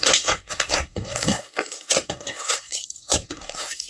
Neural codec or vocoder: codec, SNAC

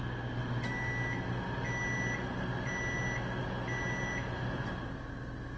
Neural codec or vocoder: none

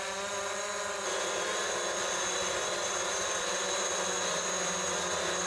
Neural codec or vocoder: none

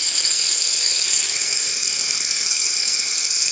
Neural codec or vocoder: codec, SNAC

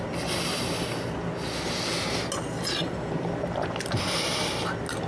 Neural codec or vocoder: none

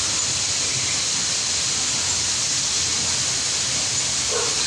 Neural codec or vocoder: none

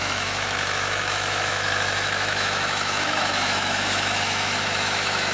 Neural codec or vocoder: autoencoder, DAC-VAE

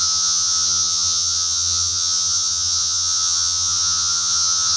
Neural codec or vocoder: vocoder, HiFi-GAN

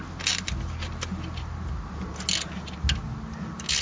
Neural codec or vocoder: none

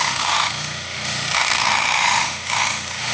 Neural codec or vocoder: autoencoder, DAC-VAE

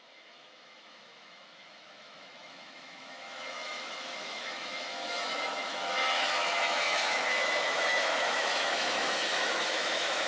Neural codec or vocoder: autoencoder, DAC-VAE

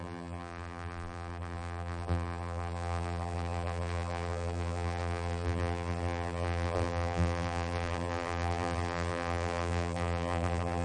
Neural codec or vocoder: vocoder, BigVGAN v2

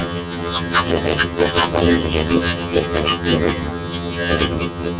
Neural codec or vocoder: vocoder, HiFi-GAN